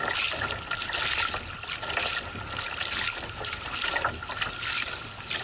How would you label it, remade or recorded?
recorded